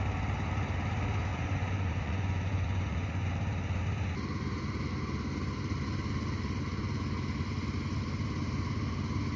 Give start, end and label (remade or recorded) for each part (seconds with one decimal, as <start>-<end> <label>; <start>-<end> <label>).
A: 0.0-1.3 recorded; 1.3-3.3 remade; 3.3-9.4 recorded